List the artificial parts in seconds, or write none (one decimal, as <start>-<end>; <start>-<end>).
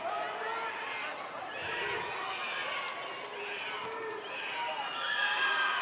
none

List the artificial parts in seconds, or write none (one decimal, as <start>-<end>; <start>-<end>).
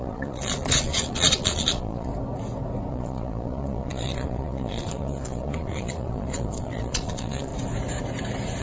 0.0-2.1; 2.9-7.5